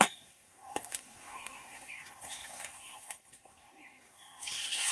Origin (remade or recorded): remade